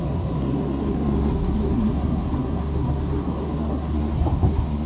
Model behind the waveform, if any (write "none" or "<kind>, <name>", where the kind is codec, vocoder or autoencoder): codec, SNAC